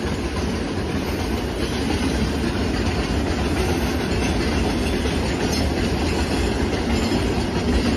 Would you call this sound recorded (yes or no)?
yes